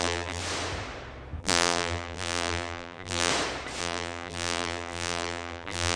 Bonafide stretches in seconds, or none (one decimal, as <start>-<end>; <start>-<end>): 0.4-1.4; 3.3-3.8